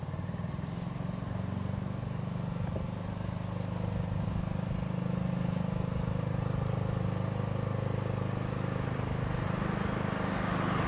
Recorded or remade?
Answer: recorded